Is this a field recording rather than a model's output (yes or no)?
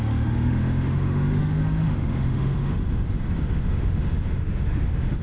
no